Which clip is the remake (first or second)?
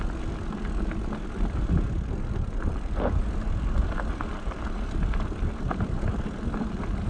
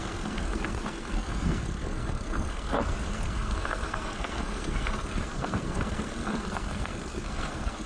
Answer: second